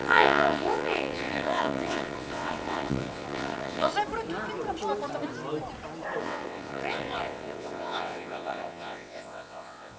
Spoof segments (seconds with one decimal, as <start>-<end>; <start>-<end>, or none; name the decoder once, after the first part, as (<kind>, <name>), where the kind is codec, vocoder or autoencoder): 0.0-3.9 (vocoder, WaveNeXt); 6.2-10.0